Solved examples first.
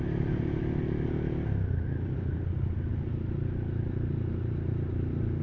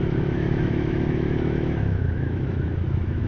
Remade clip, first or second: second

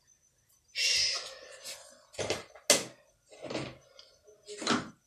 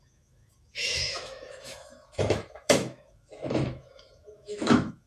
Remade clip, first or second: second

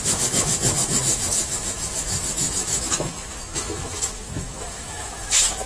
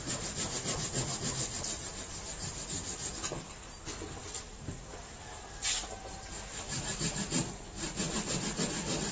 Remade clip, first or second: first